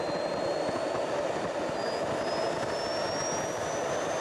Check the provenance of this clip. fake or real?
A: real